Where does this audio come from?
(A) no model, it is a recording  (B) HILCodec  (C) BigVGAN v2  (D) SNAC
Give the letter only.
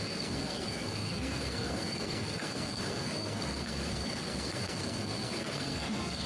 D